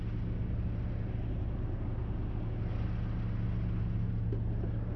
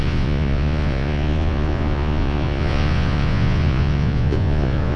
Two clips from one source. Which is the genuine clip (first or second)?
first